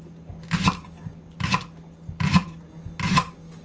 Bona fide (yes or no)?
yes